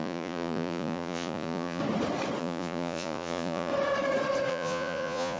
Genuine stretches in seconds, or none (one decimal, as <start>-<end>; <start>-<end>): 1.8-2.4; 3.7-4.5